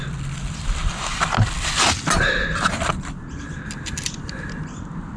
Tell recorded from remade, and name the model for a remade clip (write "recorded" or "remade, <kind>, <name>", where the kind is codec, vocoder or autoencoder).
recorded